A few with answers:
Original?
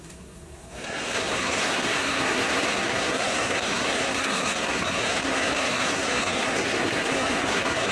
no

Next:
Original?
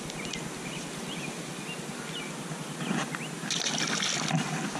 yes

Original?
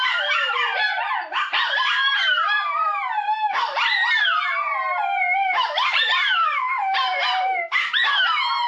no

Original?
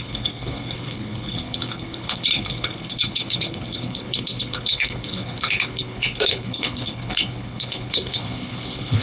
no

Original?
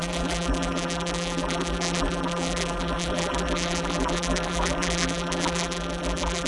no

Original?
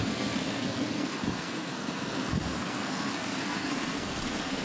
no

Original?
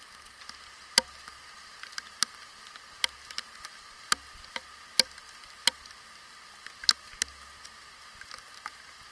yes